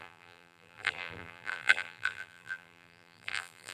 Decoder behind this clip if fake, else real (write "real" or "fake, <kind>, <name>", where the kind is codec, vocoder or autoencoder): fake, vocoder, BigVGAN v2